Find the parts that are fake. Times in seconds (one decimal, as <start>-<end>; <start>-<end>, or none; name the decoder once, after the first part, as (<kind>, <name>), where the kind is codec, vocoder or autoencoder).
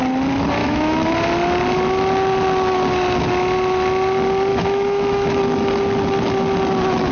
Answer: 0.6-1.1 (autoencoder, DAC-VAE); 4.5-5.4